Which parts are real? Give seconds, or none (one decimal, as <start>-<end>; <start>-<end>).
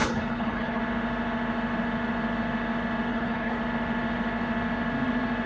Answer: 0.8-3.1; 3.6-5.5